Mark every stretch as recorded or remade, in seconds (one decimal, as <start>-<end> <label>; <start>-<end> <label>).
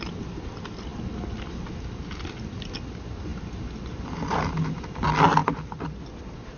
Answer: 0.0-6.6 recorded